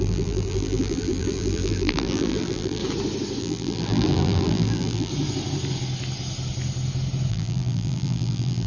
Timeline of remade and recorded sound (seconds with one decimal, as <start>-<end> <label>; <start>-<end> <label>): 0.0-2.8 remade; 2.8-3.4 recorded; 3.4-5.1 remade; 5.1-7.3 recorded; 7.3-8.7 remade